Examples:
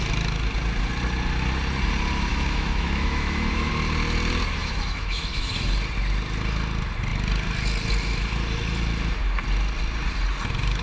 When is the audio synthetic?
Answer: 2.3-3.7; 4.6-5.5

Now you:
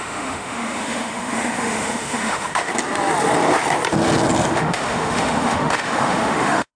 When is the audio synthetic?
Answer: 0.0-2.7; 4.5-6.8

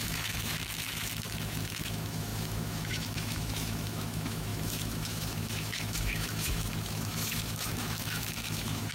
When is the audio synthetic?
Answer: 0.0-8.9

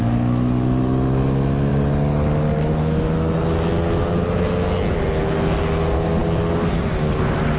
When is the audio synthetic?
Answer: none

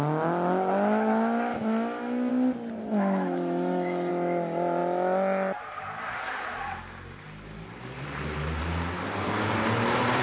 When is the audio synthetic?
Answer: 1.5-2.3; 2.8-4.1

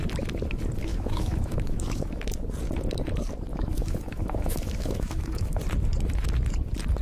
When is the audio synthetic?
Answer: 0.9-2.1; 3.5-5.6